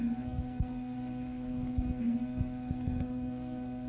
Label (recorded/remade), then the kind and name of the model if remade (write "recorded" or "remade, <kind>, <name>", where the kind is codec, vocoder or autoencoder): remade, codec, SNAC